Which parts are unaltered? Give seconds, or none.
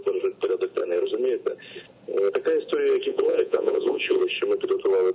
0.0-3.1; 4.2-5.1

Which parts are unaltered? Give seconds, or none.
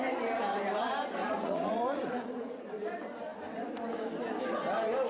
0.0-1.2; 2.6-5.1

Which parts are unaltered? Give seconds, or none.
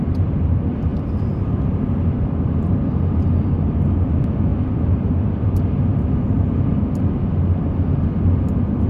0.0-8.9